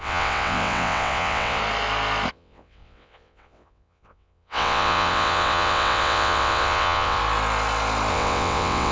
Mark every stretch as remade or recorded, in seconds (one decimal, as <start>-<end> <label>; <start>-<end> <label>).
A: 0.0-1.6 remade; 1.6-2.3 recorded; 2.3-7.2 remade; 7.2-8.1 recorded; 8.1-8.9 remade